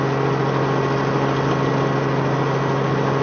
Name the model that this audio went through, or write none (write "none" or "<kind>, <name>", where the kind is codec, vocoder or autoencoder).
none